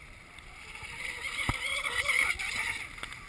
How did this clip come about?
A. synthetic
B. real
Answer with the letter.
B